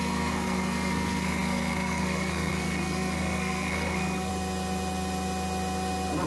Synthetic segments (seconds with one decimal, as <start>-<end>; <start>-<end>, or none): 0.0-4.3